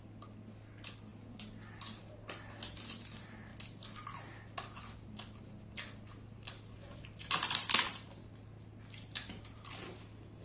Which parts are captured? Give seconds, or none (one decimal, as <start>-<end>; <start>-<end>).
0.0-10.4